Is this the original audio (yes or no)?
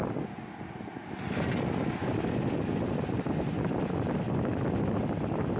yes